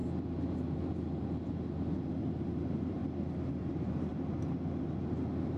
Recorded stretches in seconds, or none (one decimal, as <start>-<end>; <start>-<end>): 0.0-2.6; 3.0-3.5; 4.1-5.6